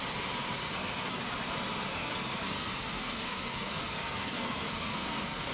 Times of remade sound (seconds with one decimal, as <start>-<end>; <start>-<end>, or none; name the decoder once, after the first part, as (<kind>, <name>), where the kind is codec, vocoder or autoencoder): 0.6-1.2 (codec, SNAC); 1.9-5.5